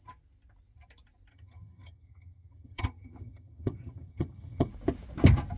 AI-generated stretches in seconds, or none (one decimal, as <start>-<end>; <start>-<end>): 1.3-4.7